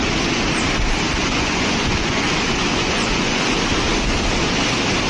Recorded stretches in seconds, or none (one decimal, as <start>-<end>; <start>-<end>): 0.0-1.2; 3.4-5.1